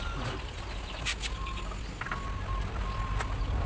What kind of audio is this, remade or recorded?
recorded